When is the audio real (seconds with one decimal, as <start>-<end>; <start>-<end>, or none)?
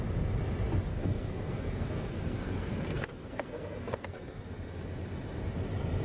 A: 0.0-0.9; 4.5-6.0